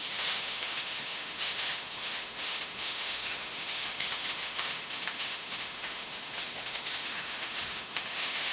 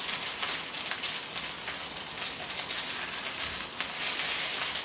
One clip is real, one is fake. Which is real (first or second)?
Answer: second